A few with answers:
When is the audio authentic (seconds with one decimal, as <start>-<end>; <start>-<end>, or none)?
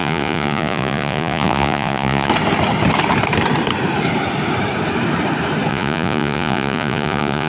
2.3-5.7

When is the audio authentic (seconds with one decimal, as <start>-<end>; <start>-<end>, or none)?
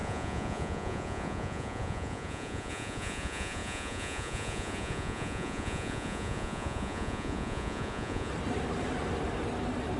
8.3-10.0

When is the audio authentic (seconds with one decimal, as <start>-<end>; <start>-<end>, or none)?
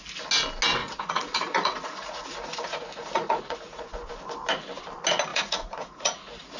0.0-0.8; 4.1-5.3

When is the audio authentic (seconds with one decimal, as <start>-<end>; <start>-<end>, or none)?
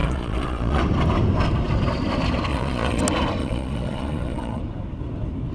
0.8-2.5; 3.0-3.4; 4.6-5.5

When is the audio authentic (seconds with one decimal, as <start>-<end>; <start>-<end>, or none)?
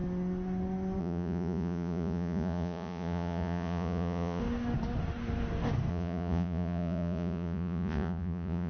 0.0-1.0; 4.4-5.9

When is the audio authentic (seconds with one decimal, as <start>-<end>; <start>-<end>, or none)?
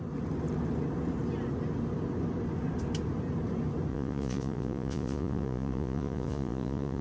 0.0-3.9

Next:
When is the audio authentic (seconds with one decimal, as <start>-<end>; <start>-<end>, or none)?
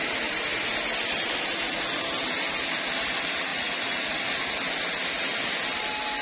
0.0-3.5; 4.2-6.2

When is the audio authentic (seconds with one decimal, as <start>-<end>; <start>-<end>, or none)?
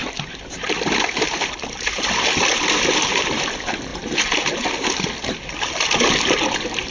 0.0-6.9